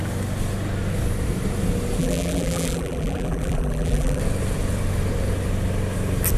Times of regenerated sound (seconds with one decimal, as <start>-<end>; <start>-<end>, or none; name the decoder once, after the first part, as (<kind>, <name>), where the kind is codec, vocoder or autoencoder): 2.0-4.2 (vocoder, BigVGAN v2)